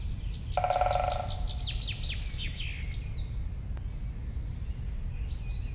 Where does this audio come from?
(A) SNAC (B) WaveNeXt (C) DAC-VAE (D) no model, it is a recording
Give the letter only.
D